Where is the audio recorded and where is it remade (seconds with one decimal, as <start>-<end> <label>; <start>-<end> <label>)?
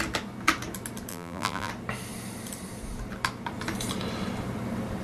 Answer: 0.0-1.1 recorded; 1.1-1.7 remade; 1.7-5.0 recorded